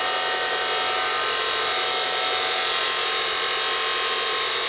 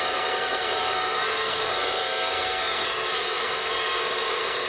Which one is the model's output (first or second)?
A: second